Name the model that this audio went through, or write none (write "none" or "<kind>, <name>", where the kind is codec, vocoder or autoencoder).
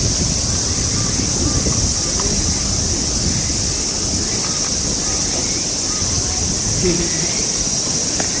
none